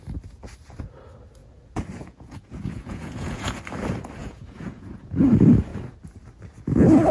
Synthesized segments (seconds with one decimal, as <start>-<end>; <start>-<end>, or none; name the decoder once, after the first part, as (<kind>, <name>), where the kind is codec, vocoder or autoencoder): 1.4-3.6 (vocoder, Vocos); 4.2-5.3